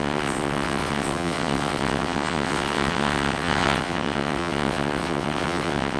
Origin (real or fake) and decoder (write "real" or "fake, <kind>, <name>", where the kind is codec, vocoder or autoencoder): fake, vocoder, WaveNeXt